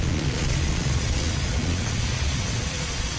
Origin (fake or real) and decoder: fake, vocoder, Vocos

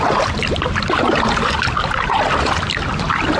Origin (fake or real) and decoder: real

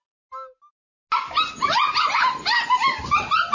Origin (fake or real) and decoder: real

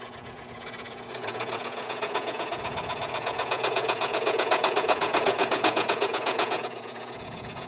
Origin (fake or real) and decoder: fake, vocoder, Vocos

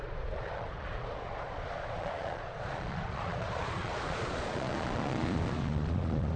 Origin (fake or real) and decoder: fake, vocoder, Vocos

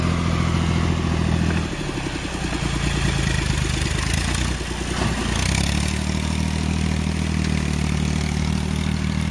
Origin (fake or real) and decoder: real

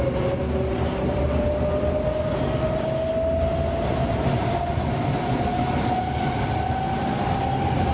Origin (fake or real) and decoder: real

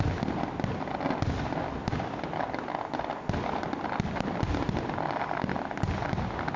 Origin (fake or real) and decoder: real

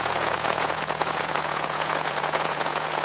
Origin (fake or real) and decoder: fake, vocoder, Vocos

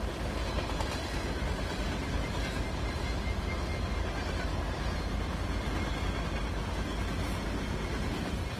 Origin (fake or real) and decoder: real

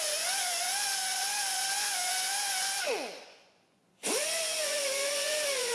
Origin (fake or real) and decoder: fake, vocoder, Vocos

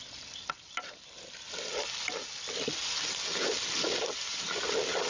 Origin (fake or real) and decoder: real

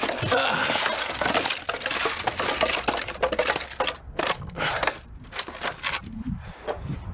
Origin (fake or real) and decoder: real